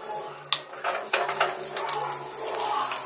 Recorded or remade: recorded